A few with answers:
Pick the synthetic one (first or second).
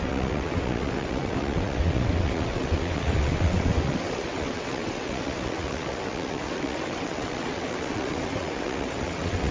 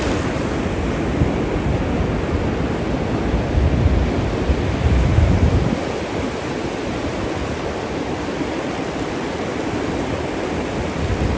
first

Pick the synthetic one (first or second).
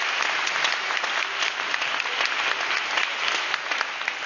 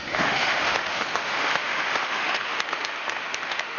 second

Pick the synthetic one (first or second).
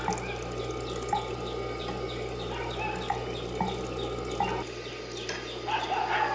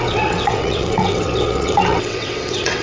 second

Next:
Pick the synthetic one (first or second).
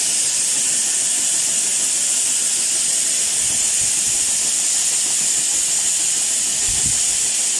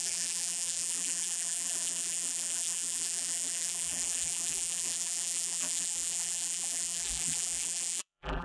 second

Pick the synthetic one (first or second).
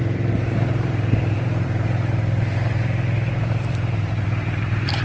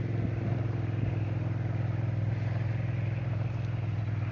first